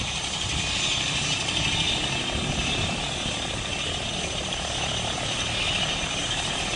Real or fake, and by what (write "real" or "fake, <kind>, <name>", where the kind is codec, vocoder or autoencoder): real